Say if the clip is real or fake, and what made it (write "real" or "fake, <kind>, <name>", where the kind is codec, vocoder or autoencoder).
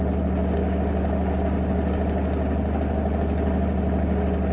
real